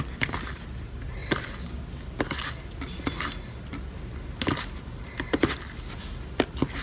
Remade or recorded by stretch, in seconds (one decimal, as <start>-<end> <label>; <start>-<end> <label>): 0.0-6.8 recorded